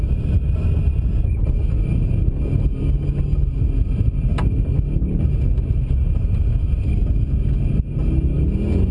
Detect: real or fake real